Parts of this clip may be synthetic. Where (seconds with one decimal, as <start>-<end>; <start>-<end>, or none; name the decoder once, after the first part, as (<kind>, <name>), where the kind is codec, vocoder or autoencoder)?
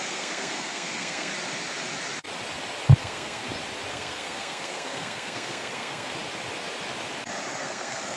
0.0-1.3 (codec, SNAC); 3.0-3.4; 3.9-6.1; 7.6-8.2